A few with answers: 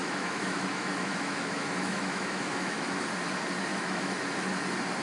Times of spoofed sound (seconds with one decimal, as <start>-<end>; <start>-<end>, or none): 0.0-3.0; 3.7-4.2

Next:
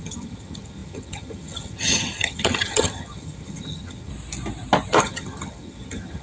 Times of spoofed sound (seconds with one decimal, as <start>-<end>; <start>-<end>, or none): 0.0-4.1; 5.0-6.2

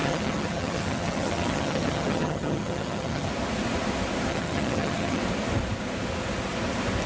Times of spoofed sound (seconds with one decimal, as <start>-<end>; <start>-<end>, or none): 0.0-3.3; 4.3-5.2

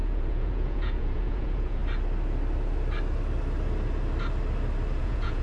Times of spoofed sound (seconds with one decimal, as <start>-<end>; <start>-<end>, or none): 0.0-1.8; 5.0-5.4